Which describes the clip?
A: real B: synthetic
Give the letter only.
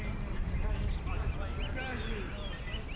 A